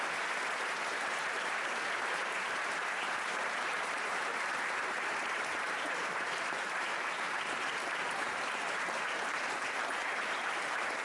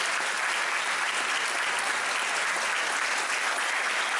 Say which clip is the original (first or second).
second